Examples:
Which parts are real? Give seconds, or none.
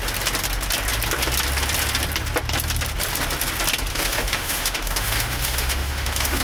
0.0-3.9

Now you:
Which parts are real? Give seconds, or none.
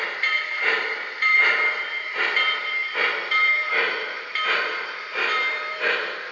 none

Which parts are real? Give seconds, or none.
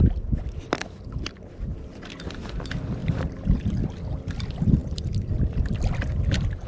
0.0-3.0; 4.1-4.8; 5.9-6.7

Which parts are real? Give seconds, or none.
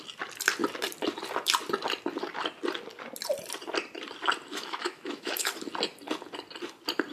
0.0-4.5; 5.5-7.1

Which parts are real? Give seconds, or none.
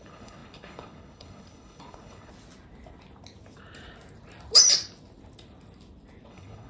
2.3-6.3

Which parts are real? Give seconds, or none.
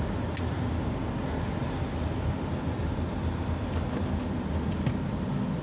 0.0-5.6